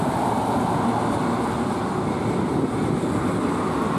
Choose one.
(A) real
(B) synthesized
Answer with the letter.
A